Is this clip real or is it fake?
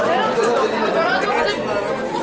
real